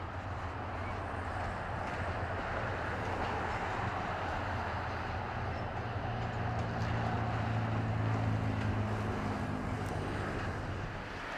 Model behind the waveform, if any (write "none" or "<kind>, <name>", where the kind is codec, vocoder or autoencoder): none